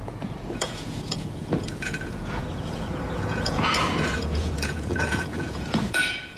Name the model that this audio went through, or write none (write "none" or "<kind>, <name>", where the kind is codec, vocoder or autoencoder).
vocoder, Vocos